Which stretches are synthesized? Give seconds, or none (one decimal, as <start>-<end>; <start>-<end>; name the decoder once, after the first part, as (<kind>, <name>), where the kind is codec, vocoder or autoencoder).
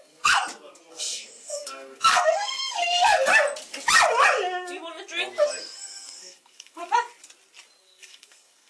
0.0-0.4 (codec, SNAC); 0.9-3.3; 5.6-6.8; 7.8-8.7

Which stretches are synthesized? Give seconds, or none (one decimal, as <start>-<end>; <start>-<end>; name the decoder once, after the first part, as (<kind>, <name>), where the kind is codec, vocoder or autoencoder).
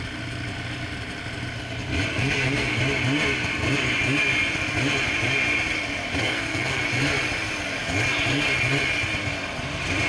2.1-2.8 (codec, SNAC); 6.2-6.8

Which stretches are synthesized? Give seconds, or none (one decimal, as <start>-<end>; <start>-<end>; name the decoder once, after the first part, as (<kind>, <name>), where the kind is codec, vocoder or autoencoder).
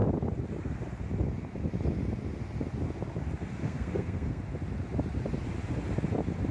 3.6-4.4 (codec, SNAC)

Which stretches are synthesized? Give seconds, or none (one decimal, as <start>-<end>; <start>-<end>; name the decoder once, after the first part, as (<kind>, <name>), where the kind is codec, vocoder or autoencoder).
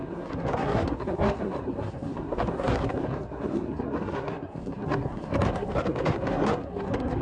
0.0-7.2 (codec, SNAC)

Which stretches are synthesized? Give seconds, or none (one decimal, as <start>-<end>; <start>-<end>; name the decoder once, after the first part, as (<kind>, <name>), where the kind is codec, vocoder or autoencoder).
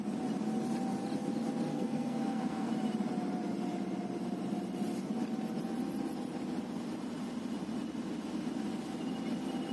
1.7-2.7 (codec, SNAC)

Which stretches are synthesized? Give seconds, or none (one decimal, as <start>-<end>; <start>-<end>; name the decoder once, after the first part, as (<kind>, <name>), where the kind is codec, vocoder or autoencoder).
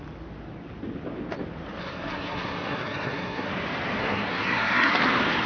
1.8-3.5 (codec, SNAC); 4.0-5.0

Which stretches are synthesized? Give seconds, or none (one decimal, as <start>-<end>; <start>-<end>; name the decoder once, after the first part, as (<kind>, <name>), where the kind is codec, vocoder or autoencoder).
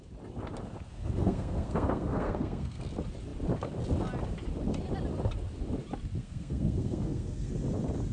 0.9-2.8 (codec, SNAC); 6.2-7.5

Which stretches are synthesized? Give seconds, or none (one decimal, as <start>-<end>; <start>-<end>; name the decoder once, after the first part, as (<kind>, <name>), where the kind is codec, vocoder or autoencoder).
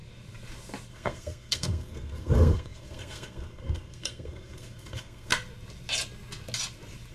0.9-5.3 (codec, SNAC)